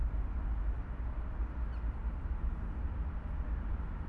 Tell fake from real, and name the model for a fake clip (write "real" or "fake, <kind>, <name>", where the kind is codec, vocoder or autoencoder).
real